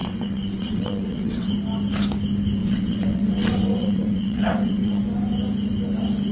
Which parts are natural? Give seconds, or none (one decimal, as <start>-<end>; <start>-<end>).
1.5-2.6; 5.0-6.3